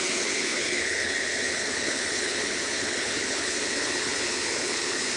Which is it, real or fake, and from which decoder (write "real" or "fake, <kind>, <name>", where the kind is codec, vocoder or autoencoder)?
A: fake, codec, HILCodec